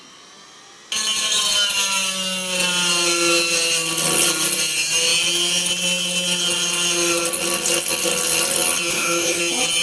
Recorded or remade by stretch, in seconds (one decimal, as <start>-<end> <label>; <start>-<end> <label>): 0.0-8.9 recorded; 8.9-9.4 remade; 9.4-9.8 recorded